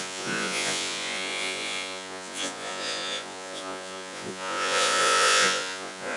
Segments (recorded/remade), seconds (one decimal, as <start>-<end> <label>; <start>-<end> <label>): 0.0-6.2 remade